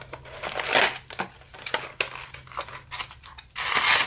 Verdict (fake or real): real